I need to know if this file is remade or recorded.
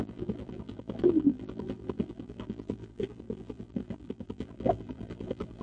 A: remade